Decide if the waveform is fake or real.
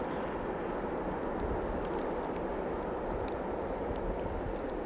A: real